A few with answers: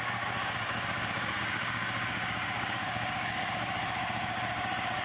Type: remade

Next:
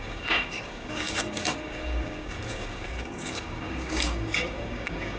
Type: remade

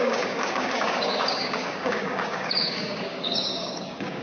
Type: remade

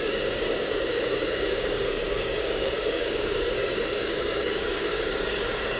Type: remade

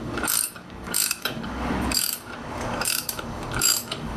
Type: remade